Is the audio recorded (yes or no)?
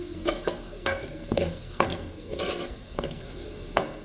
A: no